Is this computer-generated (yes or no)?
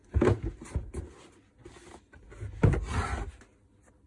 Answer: no